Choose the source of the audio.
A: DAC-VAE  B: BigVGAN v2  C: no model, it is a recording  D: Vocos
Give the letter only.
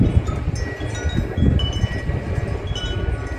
C